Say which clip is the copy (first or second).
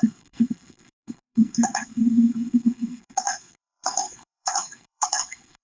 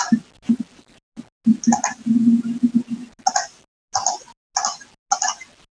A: first